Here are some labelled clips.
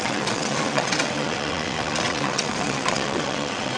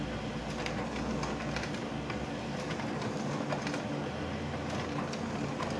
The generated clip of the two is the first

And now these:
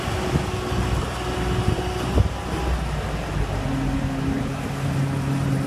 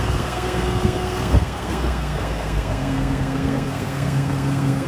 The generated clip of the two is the second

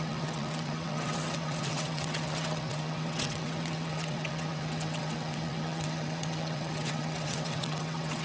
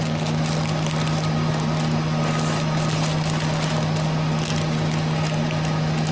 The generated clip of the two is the first